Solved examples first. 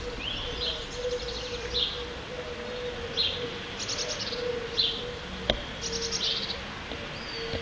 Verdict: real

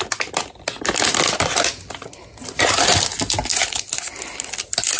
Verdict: real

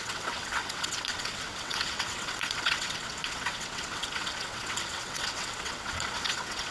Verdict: fake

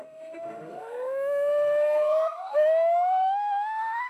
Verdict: fake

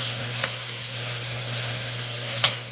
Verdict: fake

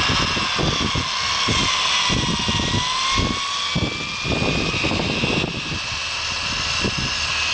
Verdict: real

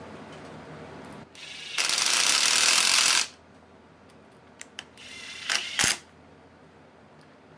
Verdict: real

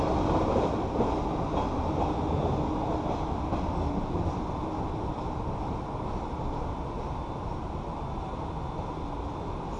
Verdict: real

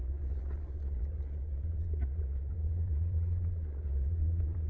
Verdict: fake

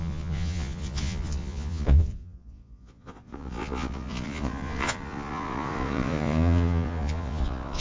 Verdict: fake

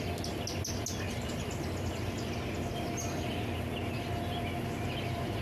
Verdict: real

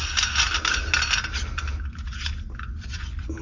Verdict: real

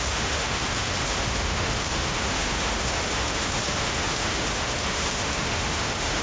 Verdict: fake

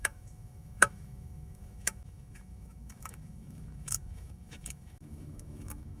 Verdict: fake